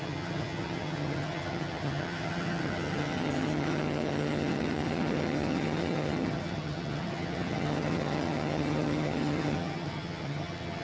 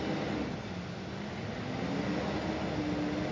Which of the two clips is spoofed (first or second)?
first